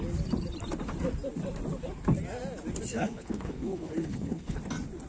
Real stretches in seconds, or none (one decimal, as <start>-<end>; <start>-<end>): 0.0-2.9; 4.6-5.1